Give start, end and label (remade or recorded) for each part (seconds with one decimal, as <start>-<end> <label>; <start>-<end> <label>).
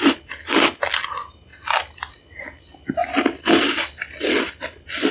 0.0-5.1 recorded